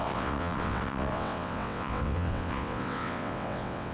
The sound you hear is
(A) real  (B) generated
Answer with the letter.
B